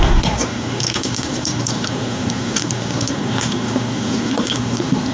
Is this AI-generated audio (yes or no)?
yes